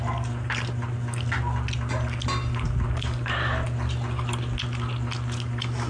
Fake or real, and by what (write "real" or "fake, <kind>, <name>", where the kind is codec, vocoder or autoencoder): real